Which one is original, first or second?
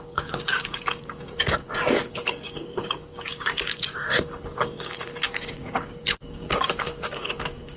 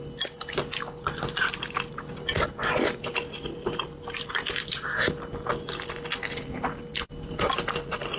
second